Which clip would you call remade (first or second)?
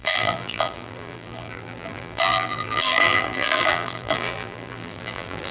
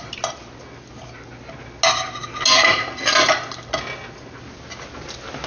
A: first